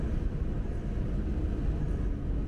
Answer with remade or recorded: recorded